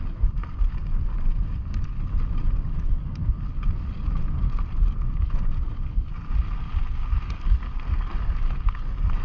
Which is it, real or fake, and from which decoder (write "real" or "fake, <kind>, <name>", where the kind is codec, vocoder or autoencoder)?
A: real